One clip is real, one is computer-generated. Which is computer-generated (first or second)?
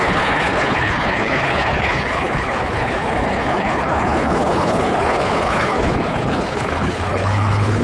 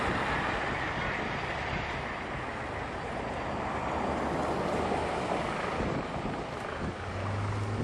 first